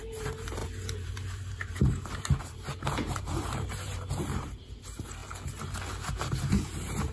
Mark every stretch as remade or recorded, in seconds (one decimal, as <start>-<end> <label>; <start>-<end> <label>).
0.0-5.2 remade; 5.2-6.1 recorded; 6.1-7.1 remade